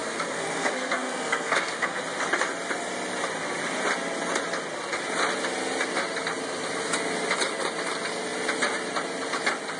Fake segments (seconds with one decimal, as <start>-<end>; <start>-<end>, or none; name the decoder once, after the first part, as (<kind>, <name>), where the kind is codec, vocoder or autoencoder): 0.0-2.0 (codec, SNAC)